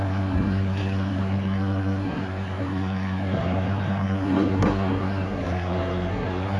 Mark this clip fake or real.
fake